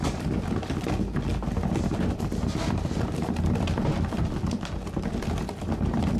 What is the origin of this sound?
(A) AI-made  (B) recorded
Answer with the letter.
B